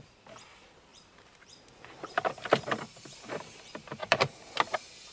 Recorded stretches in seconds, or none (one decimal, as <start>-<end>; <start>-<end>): 0.0-0.9; 2.6-5.1

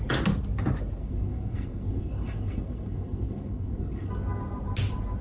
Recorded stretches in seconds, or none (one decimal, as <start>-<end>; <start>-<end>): 0.0-1.0; 4.1-5.2

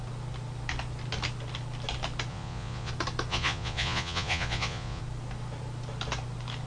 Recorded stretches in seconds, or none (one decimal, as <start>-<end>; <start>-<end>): 0.0-2.3; 2.9-3.3; 5.0-6.7

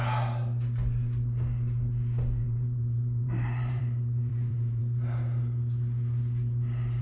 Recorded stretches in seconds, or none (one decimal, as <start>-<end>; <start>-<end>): 0.0-2.4; 3.8-4.3; 4.8-7.0

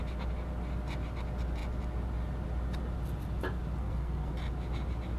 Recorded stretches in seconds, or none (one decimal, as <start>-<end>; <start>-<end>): 0.0-3.8; 4.3-5.2